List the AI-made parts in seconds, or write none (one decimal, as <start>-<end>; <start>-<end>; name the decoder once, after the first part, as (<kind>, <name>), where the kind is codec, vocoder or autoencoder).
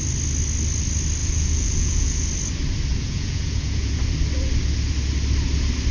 1.2-2.3 (vocoder, Vocos); 2.9-4.0